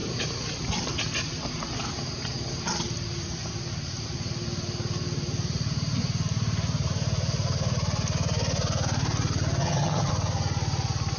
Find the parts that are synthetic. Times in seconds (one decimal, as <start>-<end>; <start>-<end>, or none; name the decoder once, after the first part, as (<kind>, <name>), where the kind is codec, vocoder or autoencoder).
9.6-10.1 (vocoder, HiFi-GAN)